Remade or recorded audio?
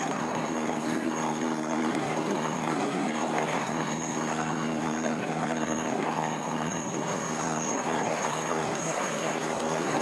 remade